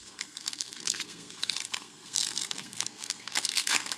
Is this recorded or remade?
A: remade